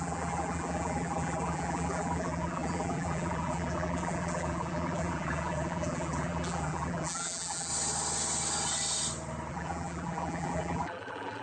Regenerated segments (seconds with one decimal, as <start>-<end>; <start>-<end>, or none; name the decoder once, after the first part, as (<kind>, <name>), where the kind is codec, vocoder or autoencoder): 0.0-7.7 (vocoder, BigVGAN v2); 9.5-11.4